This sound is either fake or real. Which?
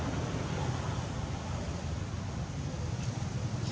real